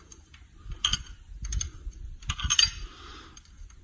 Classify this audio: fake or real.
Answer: real